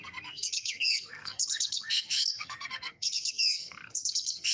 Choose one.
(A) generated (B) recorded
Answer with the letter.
A